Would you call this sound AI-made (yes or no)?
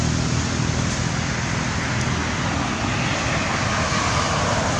no